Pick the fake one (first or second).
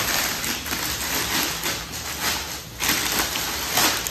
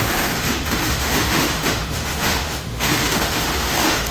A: second